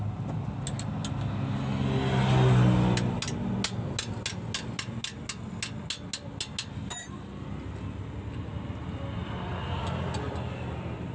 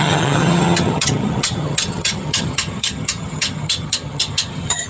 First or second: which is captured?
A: first